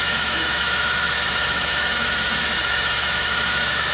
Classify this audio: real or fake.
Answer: fake